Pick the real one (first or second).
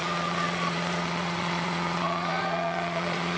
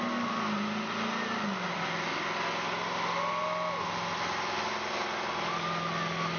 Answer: second